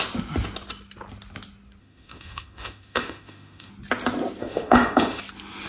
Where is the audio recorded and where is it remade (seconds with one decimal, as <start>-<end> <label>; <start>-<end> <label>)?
0.0-1.8 recorded; 1.8-3.7 remade; 3.7-4.4 recorded; 4.4-5.2 remade; 5.2-5.7 recorded